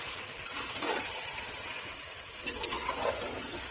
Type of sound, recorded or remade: remade